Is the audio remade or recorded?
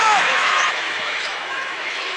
remade